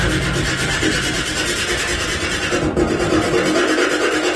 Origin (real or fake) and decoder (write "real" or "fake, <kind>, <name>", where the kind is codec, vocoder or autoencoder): real